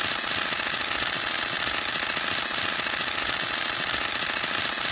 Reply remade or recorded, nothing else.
recorded